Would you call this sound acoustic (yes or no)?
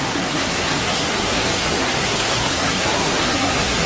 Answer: no